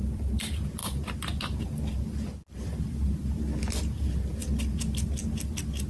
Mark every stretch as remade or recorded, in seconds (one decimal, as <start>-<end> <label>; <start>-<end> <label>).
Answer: 0.0-5.9 recorded